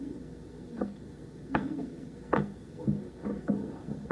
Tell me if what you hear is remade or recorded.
remade